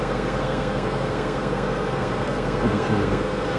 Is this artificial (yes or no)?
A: yes